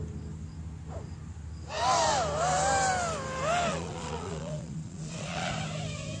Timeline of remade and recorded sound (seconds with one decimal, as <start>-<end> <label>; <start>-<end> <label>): 0.0-3.7 recorded; 3.7-5.5 remade; 5.5-6.2 recorded